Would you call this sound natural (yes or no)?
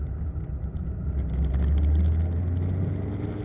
yes